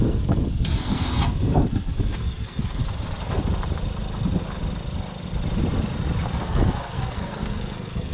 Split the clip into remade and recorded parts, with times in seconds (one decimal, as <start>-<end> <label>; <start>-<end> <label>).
0.0-2.8 remade; 2.8-6.4 recorded; 6.4-8.1 remade

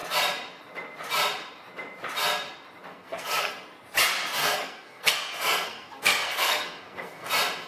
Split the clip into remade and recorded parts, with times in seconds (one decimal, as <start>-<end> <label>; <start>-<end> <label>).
0.0-2.9 recorded; 2.9-3.5 remade; 3.5-4.4 recorded; 4.4-7.3 remade; 7.3-7.7 recorded

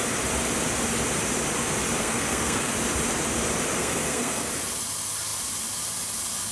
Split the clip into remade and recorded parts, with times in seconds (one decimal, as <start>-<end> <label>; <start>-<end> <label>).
0.0-2.0 recorded; 2.0-2.7 remade; 2.7-3.8 recorded; 3.8-4.5 remade; 4.5-6.5 recorded

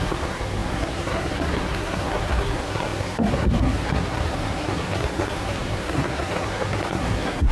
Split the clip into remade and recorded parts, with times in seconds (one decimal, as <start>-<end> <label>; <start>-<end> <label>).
0.0-7.5 remade

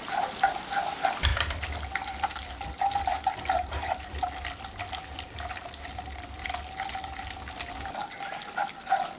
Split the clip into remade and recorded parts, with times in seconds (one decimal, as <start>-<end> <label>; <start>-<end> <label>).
0.0-9.2 recorded